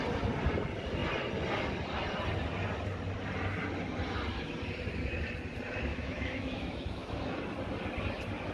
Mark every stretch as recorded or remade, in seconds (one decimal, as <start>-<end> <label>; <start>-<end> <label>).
0.0-5.9 recorded; 5.9-7.3 remade; 7.3-8.5 recorded